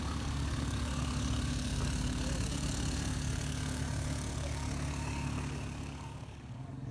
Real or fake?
fake